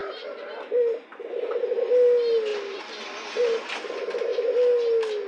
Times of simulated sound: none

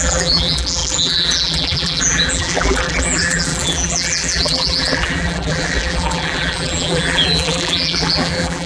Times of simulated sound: 0.0-8.7 (vocoder, BigVGAN v2)

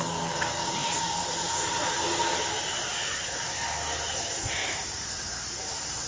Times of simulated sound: 0.8-3.1 (vocoder, BigVGAN v2); 4.6-6.1

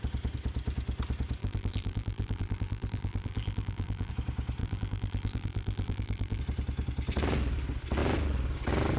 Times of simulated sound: 1.4-4.1 (vocoder, BigVGAN v2); 4.6-6.4

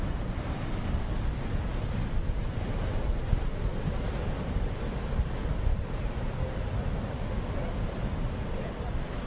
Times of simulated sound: none